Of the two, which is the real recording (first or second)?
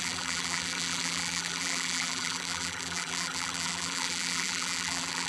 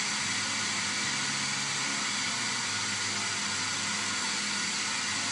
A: second